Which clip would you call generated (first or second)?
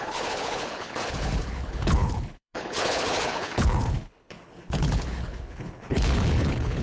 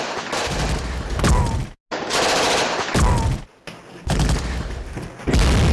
first